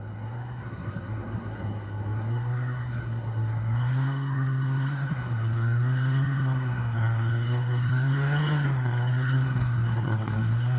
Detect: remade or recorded remade